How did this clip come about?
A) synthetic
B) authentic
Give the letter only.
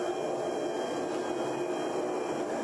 B